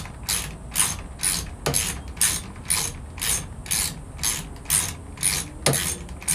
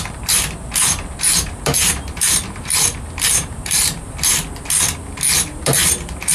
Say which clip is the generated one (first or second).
second